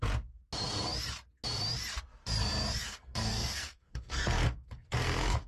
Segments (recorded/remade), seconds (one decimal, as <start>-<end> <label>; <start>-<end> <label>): 0.0-2.8 recorded; 2.8-5.5 remade